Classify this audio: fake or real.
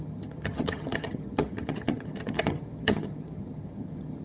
fake